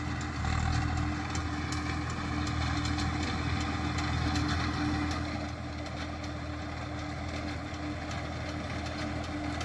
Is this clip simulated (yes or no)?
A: no